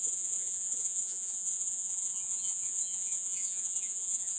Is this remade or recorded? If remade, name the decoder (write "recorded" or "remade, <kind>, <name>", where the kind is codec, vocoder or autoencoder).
remade, vocoder, Vocos